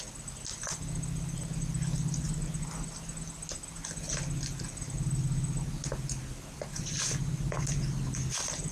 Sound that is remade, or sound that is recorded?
recorded